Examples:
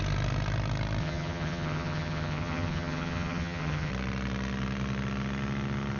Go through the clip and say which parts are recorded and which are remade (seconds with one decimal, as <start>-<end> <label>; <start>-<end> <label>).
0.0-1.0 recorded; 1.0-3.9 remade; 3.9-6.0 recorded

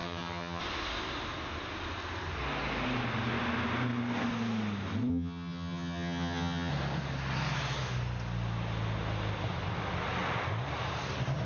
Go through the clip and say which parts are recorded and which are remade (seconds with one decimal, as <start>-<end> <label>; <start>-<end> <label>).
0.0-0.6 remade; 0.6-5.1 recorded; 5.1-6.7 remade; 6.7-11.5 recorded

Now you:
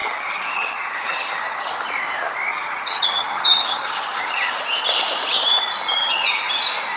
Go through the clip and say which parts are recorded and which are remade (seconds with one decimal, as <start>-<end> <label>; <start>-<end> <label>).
0.0-1.7 remade; 1.7-2.5 recorded; 2.5-4.6 remade; 4.6-6.0 recorded; 6.0-6.5 remade; 6.5-7.0 recorded

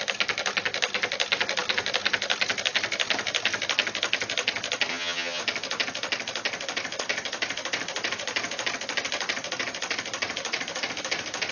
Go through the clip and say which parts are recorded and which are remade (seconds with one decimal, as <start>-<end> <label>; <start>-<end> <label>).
0.0-4.9 recorded; 4.9-5.4 remade; 5.4-11.5 recorded

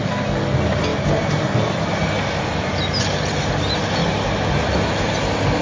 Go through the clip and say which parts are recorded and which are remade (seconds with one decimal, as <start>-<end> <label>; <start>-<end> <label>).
0.0-5.6 recorded

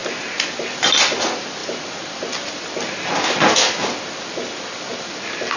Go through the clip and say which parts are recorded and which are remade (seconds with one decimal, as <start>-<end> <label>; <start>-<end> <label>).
0.0-5.6 recorded